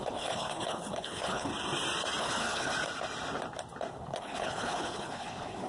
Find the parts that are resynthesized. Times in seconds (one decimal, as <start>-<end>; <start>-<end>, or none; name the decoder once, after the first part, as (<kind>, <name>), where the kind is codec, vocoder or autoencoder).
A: 0.0-1.5 (codec, HILCodec); 2.2-2.7; 3.9-5.7